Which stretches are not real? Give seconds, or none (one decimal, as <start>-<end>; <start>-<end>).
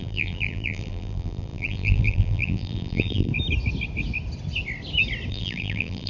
0.0-3.3; 5.3-6.1